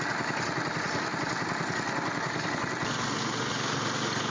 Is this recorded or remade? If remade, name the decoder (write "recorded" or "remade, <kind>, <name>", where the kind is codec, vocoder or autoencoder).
recorded